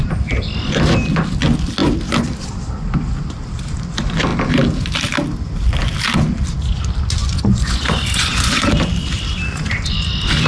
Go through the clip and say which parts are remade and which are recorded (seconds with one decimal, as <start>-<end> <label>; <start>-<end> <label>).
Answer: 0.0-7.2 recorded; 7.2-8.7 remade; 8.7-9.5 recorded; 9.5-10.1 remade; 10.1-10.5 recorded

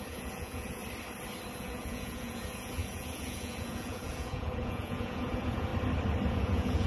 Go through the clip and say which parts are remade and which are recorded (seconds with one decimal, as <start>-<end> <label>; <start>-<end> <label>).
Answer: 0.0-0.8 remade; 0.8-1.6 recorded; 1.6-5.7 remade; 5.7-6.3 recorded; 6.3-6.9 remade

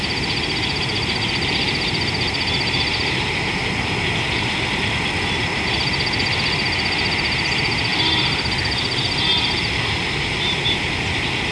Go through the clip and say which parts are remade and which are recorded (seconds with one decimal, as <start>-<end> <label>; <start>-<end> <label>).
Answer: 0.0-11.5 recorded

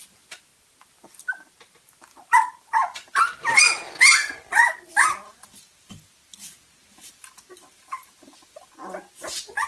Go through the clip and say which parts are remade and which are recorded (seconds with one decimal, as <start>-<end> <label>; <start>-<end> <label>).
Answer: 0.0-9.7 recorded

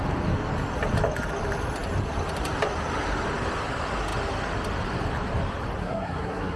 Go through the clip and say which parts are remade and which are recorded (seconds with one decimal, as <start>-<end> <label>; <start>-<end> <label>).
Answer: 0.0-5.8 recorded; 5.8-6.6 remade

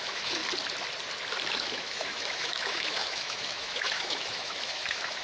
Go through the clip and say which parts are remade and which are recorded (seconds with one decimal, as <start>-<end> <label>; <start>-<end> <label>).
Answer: 0.0-0.4 remade; 0.4-1.5 recorded; 1.5-5.2 remade

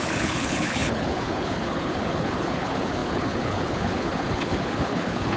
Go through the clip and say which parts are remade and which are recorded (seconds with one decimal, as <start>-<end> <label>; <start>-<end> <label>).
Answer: 0.0-5.4 remade